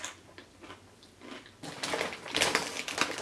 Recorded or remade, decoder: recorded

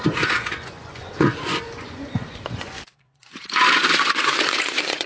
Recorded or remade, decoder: remade, vocoder, Vocos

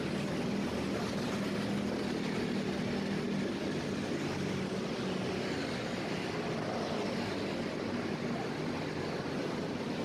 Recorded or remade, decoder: recorded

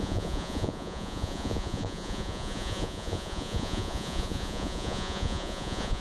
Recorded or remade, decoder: remade, vocoder, Vocos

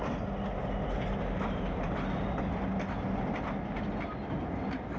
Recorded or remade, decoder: recorded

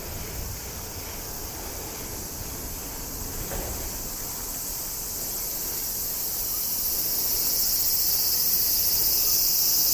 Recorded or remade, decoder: recorded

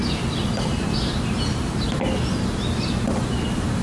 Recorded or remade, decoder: recorded